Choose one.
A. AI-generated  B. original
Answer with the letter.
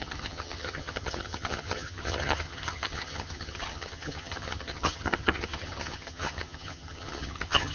A